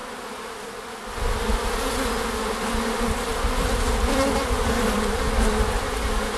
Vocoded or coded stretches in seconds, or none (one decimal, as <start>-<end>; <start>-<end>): none